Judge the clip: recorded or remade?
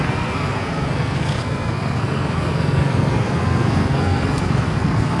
remade